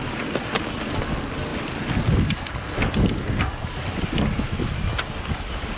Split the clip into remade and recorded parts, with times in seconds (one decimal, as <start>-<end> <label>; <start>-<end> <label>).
0.0-5.8 recorded